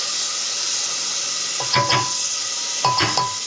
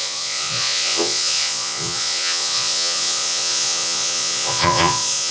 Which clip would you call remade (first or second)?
second